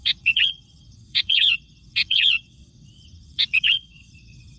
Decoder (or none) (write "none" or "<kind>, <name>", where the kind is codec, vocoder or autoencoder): vocoder, WaveNeXt